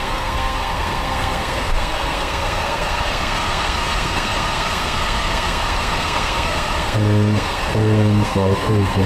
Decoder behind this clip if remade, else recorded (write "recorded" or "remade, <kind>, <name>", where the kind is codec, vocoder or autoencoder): remade, codec, SNAC